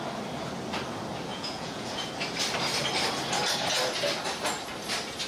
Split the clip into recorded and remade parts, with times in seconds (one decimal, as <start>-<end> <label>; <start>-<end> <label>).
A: 0.0-1.3 recorded; 1.3-2.1 remade; 2.1-5.3 recorded